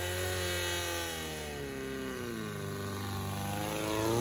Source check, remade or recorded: recorded